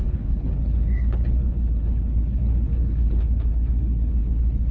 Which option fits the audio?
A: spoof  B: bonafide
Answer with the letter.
A